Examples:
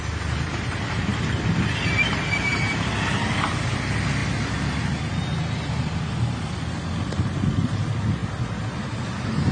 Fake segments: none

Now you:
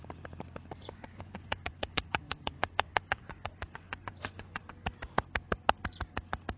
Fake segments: 0.8-4.6 (vocoder, Vocos)

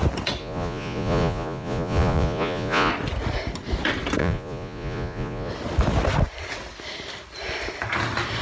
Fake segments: 0.4-2.9 (vocoder, Vocos); 4.2-5.5